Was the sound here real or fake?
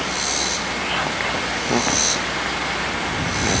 real